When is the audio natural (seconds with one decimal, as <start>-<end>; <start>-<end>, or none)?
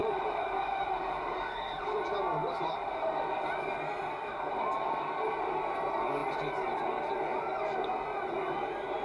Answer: 1.8-2.4; 3.1-9.0